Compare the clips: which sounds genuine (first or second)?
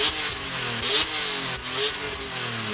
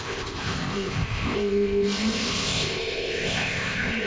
first